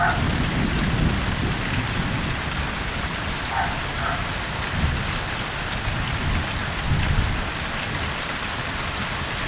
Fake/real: real